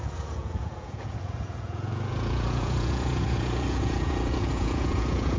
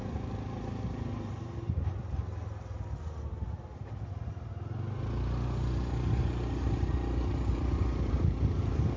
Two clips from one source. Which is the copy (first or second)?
first